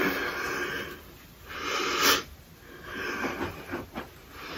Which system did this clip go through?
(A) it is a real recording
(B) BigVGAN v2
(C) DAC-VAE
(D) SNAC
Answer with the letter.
A